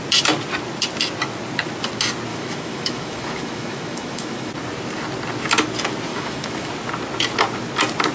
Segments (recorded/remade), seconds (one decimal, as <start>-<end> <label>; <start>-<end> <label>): 0.0-2.3 recorded; 2.3-4.5 remade; 4.5-6.1 recorded; 6.1-6.7 remade; 6.7-8.1 recorded